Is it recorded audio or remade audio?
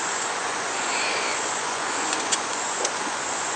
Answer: remade